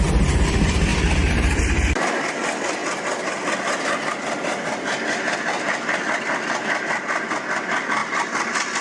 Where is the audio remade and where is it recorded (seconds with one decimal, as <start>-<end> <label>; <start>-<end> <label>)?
0.0-8.8 recorded